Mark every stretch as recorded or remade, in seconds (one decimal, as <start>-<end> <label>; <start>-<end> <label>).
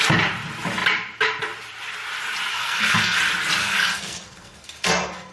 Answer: 0.0-2.5 recorded; 2.5-3.2 remade; 3.2-3.6 recorded; 3.6-5.3 remade